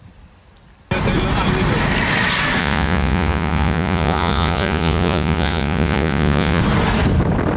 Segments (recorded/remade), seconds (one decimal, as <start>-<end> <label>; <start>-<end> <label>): 0.0-2.6 recorded; 2.6-6.6 remade; 6.6-7.6 recorded